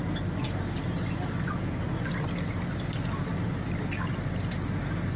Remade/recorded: recorded